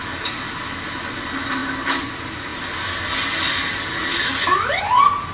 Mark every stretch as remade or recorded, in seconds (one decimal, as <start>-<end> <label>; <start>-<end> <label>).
0.0-5.3 recorded

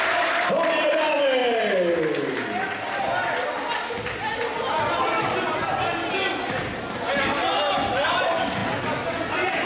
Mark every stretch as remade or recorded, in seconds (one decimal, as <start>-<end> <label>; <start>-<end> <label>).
0.0-9.7 recorded

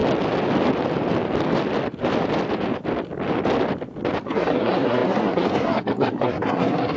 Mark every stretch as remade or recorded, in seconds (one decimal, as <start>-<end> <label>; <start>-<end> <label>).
0.0-4.2 recorded; 4.2-7.0 remade

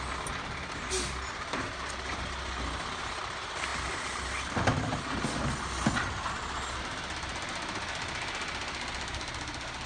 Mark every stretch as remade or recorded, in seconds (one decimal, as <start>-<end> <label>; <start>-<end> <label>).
0.0-9.9 recorded

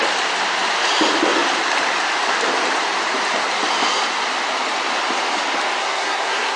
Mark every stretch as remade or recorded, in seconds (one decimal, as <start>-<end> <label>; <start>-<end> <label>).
0.0-5.8 recorded; 5.8-6.6 remade

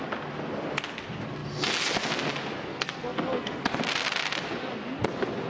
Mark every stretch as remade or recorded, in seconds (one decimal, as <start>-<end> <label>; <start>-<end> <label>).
0.0-2.7 recorded; 2.7-3.6 remade; 3.6-5.5 recorded